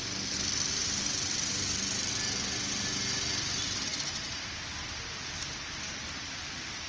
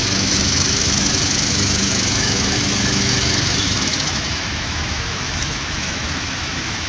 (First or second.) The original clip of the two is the first